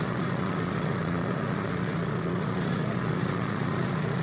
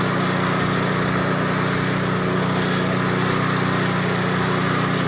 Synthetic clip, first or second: first